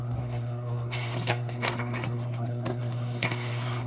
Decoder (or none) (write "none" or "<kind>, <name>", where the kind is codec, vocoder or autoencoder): codec, SNAC